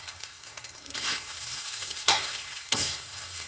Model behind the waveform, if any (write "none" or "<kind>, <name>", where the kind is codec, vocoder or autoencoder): codec, SNAC